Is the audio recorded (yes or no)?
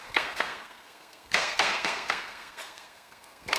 no